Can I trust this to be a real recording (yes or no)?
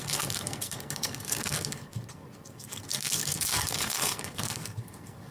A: no